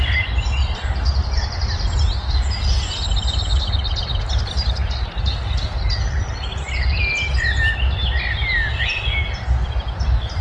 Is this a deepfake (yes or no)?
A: no